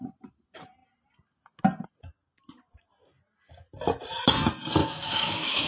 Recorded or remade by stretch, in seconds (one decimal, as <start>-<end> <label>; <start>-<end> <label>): 0.0-4.8 recorded; 4.8-5.7 remade